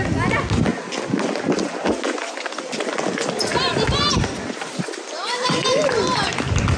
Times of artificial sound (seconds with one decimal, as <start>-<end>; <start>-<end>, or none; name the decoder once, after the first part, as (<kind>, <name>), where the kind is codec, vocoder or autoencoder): none